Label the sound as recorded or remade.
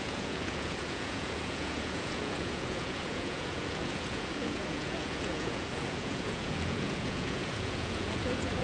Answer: remade